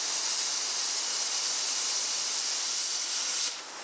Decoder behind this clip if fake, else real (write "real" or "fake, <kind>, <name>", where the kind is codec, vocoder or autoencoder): real